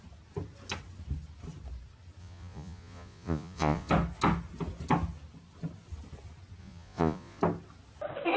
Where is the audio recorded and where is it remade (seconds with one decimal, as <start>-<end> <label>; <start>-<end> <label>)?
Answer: 0.0-2.2 recorded; 2.2-3.9 remade; 3.9-6.6 recorded; 6.6-7.4 remade; 7.4-8.4 recorded